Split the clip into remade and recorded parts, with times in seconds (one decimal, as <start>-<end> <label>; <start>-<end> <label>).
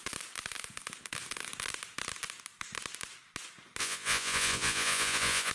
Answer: 0.0-3.8 recorded; 3.8-5.5 remade